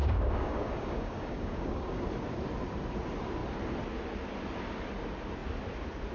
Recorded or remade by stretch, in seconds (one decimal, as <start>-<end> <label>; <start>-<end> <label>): 0.0-2.0 remade; 2.0-6.1 recorded